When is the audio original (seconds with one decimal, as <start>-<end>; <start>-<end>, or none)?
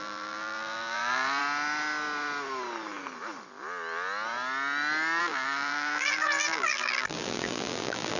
1.4-5.2